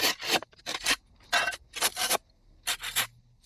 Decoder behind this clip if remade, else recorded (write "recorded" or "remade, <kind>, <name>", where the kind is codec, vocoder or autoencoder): recorded